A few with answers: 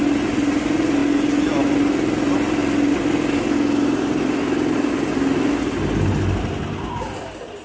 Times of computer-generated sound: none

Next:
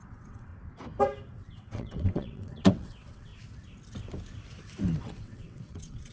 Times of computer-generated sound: 0.0-0.5 (vocoder, WaveNeXt); 1.5-3.3; 5.0-6.1

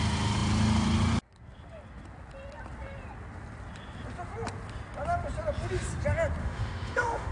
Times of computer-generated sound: 6.4-7.3 (autoencoder, DAC-VAE)

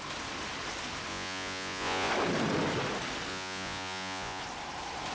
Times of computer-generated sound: 1.1-2.1 (vocoder, Vocos); 3.3-4.4

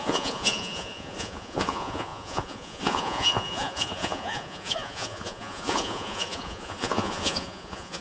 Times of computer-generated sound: 0.0-8.0 (vocoder, Vocos)